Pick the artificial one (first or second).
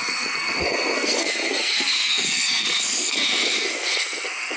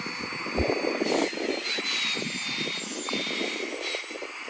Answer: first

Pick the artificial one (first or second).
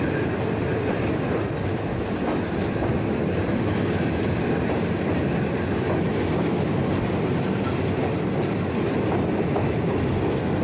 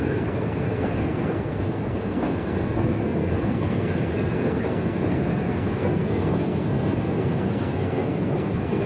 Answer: second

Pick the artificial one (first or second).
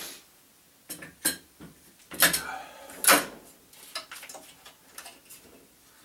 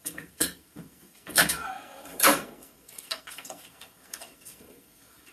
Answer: second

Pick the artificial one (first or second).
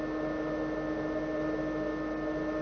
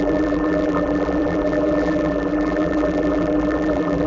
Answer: second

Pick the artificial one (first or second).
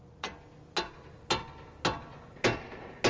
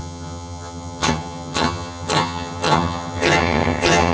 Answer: second